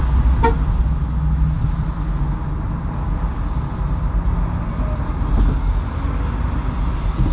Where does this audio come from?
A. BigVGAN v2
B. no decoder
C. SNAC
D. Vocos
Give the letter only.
B